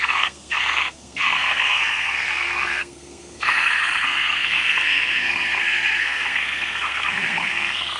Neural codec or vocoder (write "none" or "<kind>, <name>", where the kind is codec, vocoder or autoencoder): codec, SNAC